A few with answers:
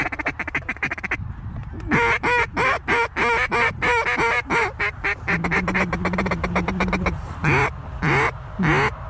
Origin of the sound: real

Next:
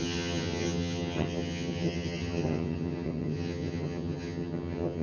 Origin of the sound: fake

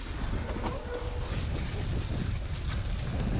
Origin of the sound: real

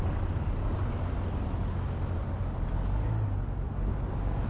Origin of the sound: real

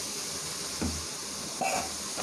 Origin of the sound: real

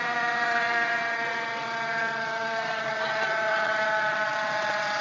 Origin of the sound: fake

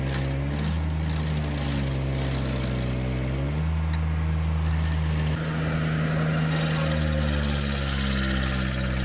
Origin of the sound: real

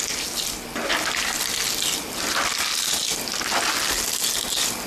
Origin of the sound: real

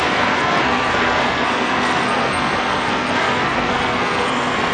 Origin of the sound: fake